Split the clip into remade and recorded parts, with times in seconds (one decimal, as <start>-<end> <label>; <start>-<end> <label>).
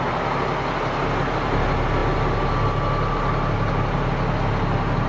0.0-5.1 recorded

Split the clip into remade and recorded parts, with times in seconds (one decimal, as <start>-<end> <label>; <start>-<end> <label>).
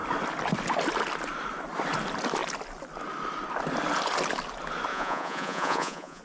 0.0-4.9 recorded; 4.9-6.2 remade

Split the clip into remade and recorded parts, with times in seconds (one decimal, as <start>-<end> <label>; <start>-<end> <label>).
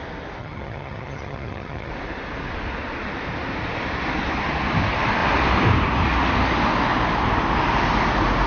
0.0-0.4 recorded; 0.4-1.9 remade; 1.9-8.5 recorded